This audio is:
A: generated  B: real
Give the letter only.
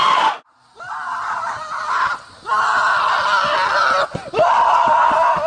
B